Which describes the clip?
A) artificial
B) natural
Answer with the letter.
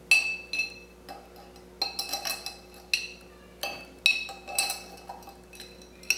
B